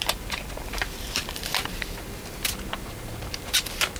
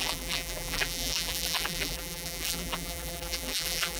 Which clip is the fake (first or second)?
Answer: second